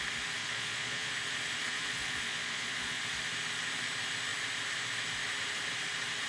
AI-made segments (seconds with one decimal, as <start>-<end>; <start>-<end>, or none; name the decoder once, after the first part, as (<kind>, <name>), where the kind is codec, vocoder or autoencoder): 0.4-1.1 (vocoder, Vocos); 1.7-3.0